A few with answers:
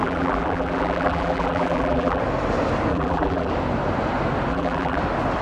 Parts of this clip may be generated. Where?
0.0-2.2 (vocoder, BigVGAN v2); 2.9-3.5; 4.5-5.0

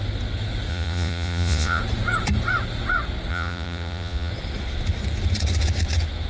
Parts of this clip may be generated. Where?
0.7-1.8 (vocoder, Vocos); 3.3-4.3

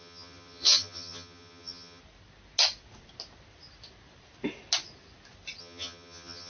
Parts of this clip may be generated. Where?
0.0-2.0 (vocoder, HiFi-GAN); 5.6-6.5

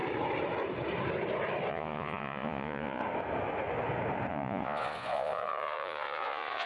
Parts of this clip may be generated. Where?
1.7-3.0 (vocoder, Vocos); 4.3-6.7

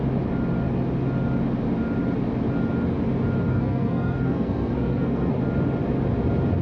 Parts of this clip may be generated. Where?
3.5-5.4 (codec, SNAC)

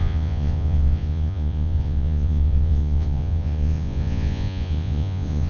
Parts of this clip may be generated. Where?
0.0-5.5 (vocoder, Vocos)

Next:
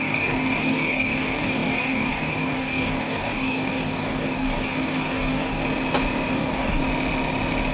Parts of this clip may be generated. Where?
0.0-5.6 (codec, DAC); 6.3-6.8